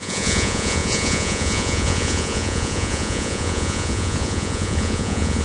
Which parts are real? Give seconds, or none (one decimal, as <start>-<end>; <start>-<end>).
none